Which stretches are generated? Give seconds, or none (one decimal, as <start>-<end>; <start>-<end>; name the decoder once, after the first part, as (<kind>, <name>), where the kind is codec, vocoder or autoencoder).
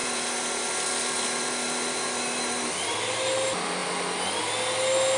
0.0-3.1 (vocoder, BigVGAN v2); 3.8-4.4